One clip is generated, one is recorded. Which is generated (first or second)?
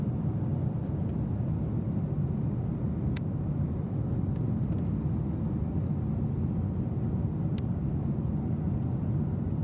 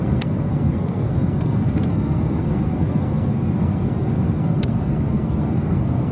second